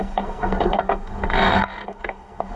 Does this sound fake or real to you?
fake